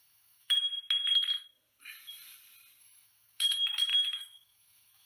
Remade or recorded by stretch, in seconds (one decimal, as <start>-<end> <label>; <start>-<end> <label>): 0.0-0.7 remade; 0.7-2.8 recorded; 2.8-5.1 remade